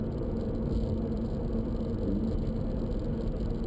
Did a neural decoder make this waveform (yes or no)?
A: no